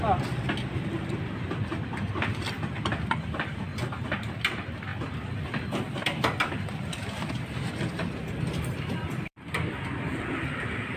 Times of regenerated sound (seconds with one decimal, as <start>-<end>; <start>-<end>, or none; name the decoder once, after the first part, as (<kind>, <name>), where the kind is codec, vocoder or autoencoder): 0.0-11.0 (vocoder, BigVGAN v2)